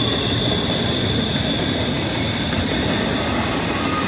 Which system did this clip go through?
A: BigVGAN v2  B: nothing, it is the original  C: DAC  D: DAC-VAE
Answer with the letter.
B